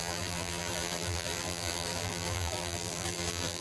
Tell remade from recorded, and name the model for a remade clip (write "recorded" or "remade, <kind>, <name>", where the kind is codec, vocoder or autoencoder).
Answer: remade, vocoder, BigVGAN v2